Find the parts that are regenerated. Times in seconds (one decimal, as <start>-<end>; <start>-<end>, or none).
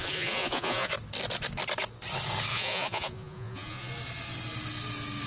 0.0-0.9; 2.5-3.9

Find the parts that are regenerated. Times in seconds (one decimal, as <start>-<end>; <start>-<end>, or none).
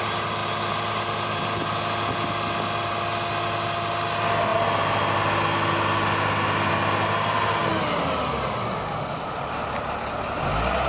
none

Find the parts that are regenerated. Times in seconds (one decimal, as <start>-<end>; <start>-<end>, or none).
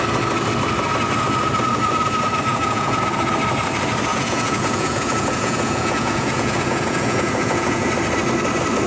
2.5-3.0; 4.1-7.9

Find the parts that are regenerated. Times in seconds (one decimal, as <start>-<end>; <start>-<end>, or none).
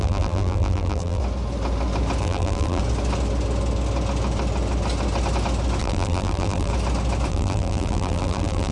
0.0-1.2; 2.2-2.8; 5.8-6.7; 7.3-8.7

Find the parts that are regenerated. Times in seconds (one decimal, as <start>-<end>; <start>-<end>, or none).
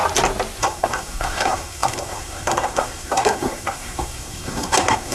0.6-5.1